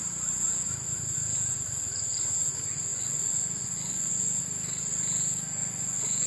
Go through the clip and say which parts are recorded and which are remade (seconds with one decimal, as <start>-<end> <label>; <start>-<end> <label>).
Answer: 0.0-2.9 recorded; 2.9-4.4 remade; 4.4-5.6 recorded; 5.6-6.3 remade